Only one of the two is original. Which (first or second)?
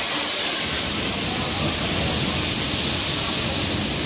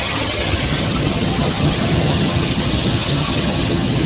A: first